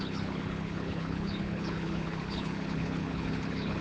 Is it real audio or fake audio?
fake